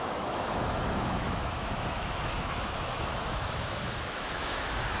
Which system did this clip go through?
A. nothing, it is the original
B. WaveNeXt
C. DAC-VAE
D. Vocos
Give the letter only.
C